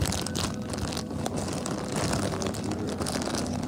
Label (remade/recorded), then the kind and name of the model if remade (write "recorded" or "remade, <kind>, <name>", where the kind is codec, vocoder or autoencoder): recorded